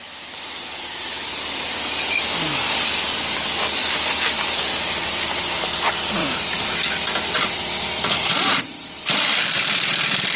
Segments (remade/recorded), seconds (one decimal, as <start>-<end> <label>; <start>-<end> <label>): 0.0-2.5 remade; 2.5-3.3 recorded; 3.3-10.4 remade